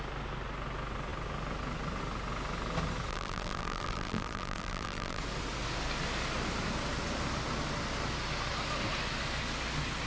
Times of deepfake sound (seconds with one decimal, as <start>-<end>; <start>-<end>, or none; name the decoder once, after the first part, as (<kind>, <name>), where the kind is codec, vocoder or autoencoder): 3.1-5.2 (vocoder, BigVGAN v2)

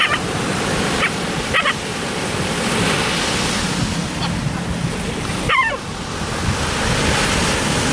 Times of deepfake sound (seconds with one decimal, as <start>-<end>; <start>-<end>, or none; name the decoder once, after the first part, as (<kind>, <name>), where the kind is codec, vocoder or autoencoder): none

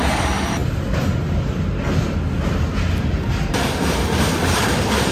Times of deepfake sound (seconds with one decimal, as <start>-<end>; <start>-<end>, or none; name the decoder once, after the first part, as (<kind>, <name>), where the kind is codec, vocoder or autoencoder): 0.0-0.6 (vocoder, BigVGAN v2); 3.5-5.1

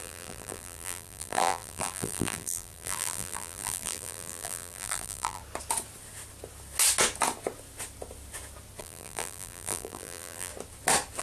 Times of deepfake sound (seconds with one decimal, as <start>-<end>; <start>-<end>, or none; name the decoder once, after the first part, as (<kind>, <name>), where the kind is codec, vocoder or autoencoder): 0.0-5.4 (vocoder, BigVGAN v2); 8.8-10.5

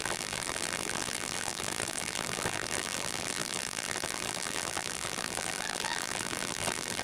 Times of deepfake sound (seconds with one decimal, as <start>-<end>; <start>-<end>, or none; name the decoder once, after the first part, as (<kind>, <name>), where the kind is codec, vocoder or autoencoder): 0.0-7.0 (vocoder, BigVGAN v2)

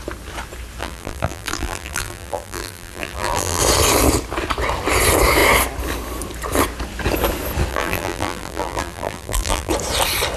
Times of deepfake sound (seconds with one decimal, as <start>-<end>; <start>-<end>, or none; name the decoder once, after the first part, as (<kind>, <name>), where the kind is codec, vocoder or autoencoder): 0.8-3.6 (vocoder, BigVGAN v2); 7.7-9.7